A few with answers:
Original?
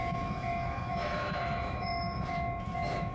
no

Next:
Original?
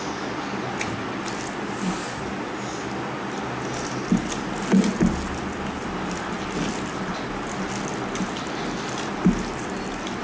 yes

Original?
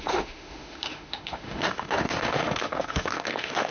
no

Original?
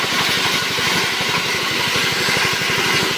yes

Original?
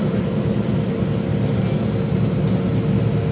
yes